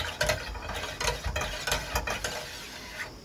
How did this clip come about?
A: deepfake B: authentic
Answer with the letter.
B